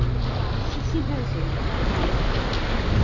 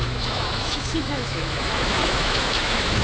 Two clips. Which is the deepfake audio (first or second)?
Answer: second